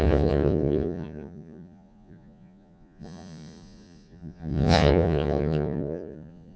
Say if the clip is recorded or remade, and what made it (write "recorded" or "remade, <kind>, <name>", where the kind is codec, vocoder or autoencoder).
remade, vocoder, Vocos